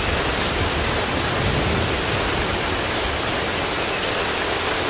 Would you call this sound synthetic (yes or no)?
no